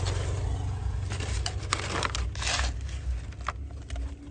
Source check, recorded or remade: recorded